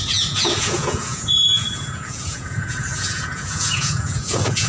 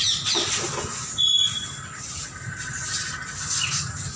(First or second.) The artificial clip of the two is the first